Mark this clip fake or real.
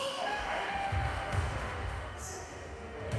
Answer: fake